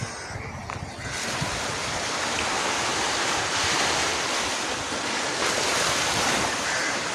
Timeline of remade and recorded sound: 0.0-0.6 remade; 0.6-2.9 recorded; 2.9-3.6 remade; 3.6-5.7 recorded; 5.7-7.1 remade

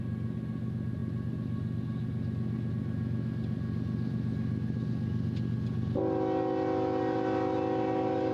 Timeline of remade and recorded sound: 0.0-8.3 recorded

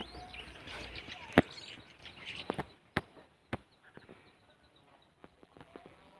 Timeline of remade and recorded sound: 0.0-5.2 recorded; 5.2-6.2 remade

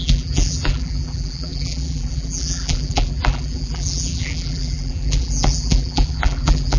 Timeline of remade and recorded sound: 0.0-6.8 remade

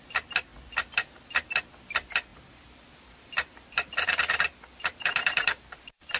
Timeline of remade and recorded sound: 0.0-2.3 recorded; 2.3-6.2 remade